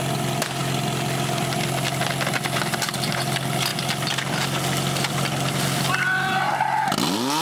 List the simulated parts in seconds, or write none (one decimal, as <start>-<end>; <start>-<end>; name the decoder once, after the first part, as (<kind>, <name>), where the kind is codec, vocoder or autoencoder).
none